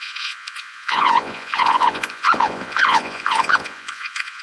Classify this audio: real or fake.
fake